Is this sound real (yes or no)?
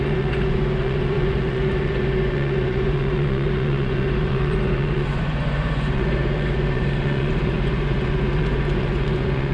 no